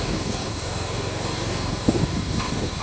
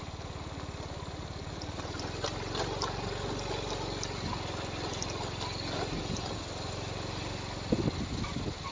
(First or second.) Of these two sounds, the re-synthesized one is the first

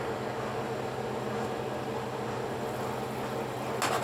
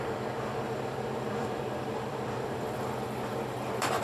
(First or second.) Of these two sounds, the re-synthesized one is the second